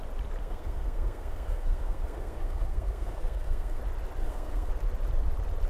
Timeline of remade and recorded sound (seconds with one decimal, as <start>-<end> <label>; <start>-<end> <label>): 0.0-0.4 recorded; 0.4-3.8 remade; 3.8-4.2 recorded; 4.2-4.7 remade; 4.7-5.7 recorded